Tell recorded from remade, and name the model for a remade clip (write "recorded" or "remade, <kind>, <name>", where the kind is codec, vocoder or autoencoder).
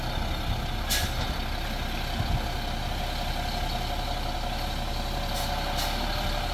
recorded